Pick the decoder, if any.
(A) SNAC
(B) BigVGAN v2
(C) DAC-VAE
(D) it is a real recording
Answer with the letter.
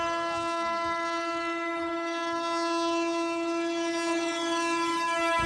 C